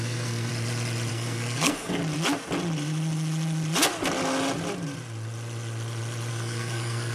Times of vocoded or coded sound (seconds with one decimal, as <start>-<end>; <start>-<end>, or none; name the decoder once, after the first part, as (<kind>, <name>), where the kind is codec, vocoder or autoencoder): 0.0-0.5 (codec, SNAC); 1.1-2.0; 6.3-7.1